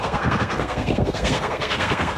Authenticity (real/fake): fake